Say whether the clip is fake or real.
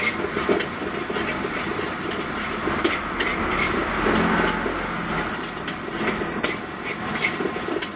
real